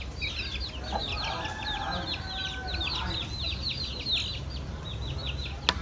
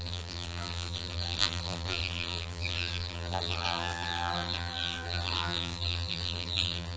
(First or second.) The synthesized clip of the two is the second